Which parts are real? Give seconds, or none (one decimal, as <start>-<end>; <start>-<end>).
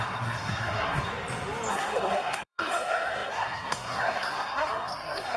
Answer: 1.1-1.7